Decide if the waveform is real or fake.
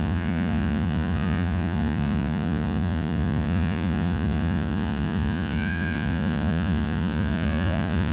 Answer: fake